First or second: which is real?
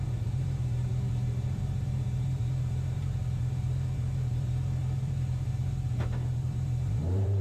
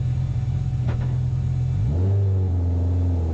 second